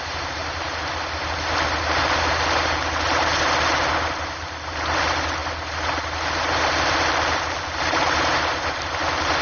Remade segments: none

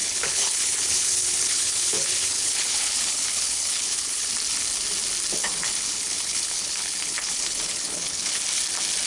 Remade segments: 0.0-4.3 (codec, HILCodec); 5.4-8.4

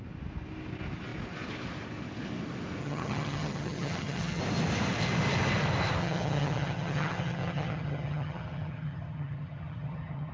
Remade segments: 2.8-4.4 (vocoder, HiFi-GAN); 6.0-10.3

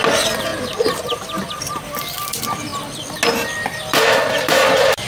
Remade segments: 0.0-2.7 (vocoder, BigVGAN v2); 3.7-5.1